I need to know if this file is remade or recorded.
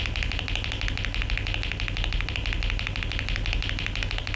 recorded